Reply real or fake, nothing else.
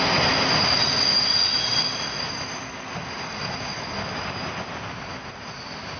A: real